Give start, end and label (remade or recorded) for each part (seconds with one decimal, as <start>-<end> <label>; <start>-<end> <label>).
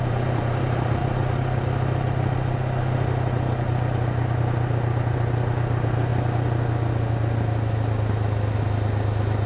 0.0-1.0 remade; 1.0-4.4 recorded; 4.4-6.1 remade; 6.1-9.5 recorded